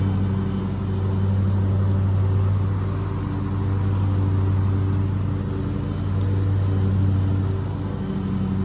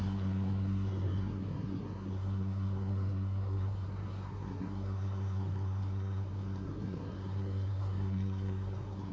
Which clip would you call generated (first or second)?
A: second